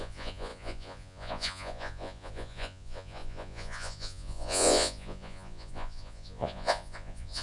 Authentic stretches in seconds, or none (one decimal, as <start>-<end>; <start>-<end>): none